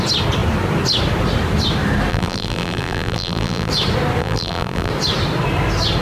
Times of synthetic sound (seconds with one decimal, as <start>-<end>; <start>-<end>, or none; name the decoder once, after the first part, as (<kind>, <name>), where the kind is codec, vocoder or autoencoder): 2.1-3.7 (vocoder, BigVGAN v2); 4.2-4.9